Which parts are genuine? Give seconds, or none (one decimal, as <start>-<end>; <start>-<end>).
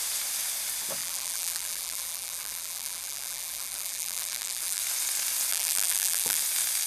0.0-1.0; 4.8-5.5; 6.4-6.9